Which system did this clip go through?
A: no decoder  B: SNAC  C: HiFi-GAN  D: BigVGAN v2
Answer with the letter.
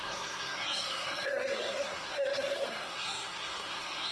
B